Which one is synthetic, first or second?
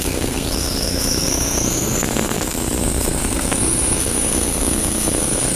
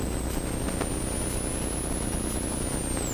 first